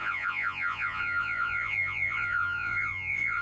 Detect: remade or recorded remade